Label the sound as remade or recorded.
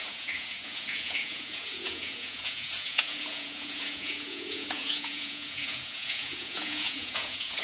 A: remade